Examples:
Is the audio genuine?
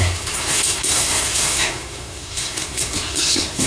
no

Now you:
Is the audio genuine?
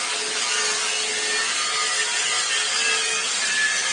yes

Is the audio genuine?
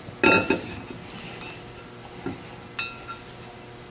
yes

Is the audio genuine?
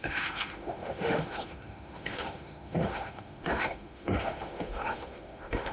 no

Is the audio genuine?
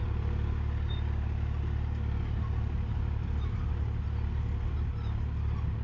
yes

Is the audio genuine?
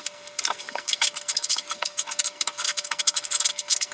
no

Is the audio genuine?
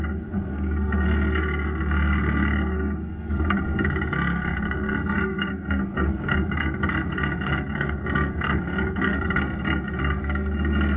no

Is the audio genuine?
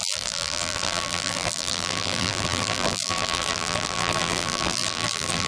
no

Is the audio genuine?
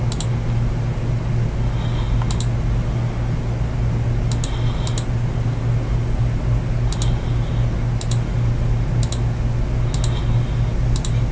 yes